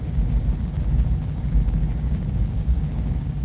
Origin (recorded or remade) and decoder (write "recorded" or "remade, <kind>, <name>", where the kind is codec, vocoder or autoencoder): remade, codec, DAC